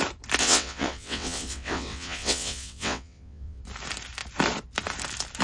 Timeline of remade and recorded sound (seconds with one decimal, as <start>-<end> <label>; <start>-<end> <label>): 0.0-0.4 recorded; 0.4-3.6 remade; 3.6-5.4 recorded